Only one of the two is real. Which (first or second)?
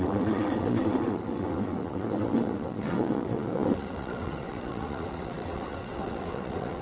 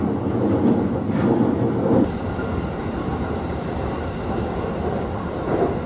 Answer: second